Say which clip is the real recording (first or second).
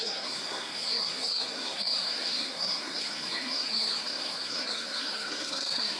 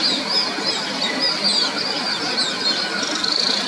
second